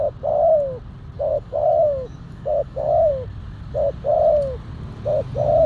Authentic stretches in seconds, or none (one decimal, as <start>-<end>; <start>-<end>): 0.0-1.3; 3.1-5.7